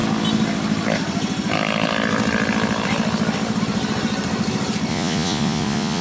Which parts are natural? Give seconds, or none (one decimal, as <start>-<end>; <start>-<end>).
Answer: 0.0-4.9